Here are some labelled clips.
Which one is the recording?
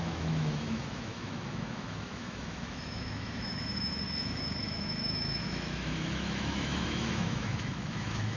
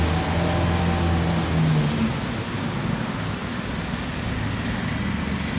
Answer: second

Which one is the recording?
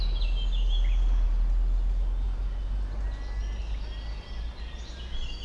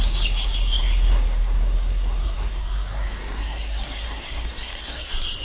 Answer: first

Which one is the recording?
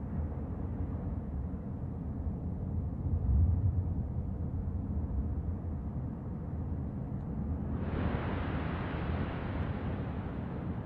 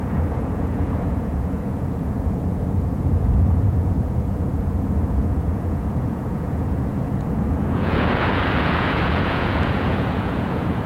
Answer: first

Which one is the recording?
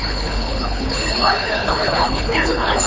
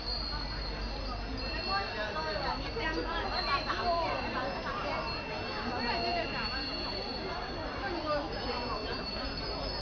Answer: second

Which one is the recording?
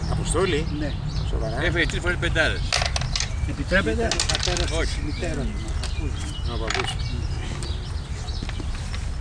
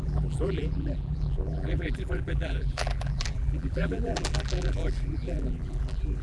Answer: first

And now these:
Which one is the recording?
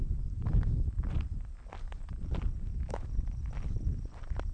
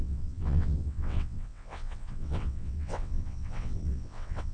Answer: first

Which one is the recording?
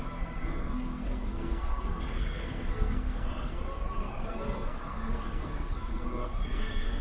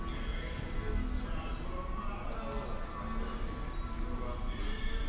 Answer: second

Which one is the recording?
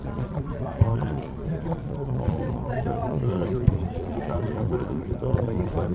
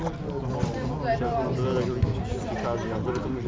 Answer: second